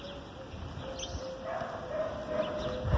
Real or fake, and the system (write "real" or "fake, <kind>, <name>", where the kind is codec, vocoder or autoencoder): real